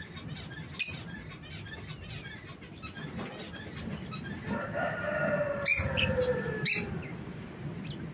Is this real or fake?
real